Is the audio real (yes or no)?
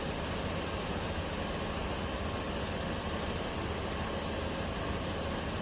yes